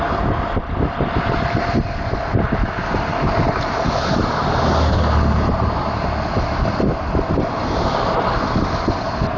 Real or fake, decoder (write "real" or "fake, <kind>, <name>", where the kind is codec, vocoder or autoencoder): real